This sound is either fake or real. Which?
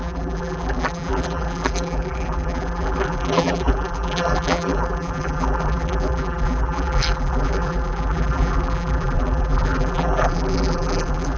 fake